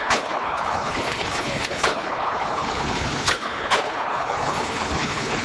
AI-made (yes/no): yes